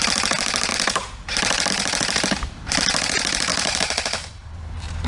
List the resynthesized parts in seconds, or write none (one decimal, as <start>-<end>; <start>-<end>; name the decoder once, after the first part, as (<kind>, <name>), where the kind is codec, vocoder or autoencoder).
0.7-1.7 (vocoder, BigVGAN v2); 3.5-5.1